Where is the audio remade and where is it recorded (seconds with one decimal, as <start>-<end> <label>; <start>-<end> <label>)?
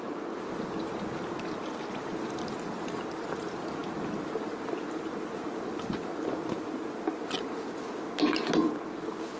0.0-9.4 recorded